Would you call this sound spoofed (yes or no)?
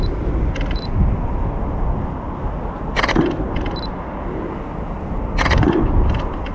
no